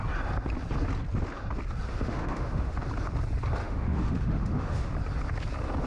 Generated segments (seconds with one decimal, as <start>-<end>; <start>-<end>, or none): 1.9-2.8; 3.6-4.9